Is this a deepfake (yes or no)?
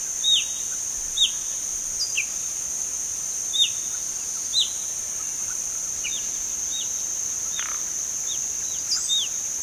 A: no